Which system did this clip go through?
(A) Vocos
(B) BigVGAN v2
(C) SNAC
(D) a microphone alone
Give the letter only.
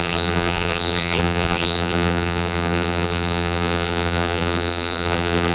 B